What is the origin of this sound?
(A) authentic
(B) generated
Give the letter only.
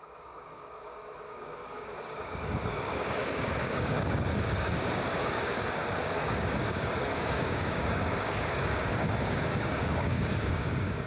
B